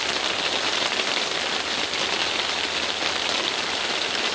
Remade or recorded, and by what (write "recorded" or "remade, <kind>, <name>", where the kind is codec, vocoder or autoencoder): recorded